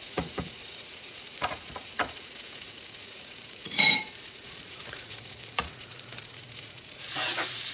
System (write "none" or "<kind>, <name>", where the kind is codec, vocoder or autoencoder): vocoder, Vocos